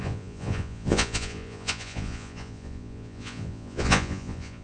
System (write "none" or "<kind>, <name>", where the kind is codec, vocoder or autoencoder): vocoder, Vocos